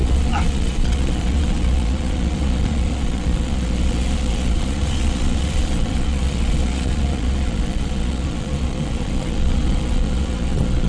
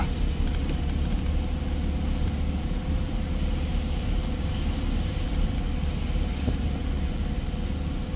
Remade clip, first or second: first